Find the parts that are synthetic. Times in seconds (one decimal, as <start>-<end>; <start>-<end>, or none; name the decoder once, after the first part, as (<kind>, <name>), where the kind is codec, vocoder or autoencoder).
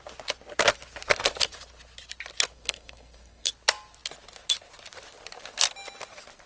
2.5-3.5 (codec, SNAC)